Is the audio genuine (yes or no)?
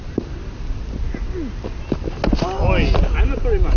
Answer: yes